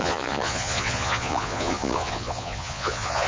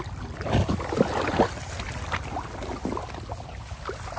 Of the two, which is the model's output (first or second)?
first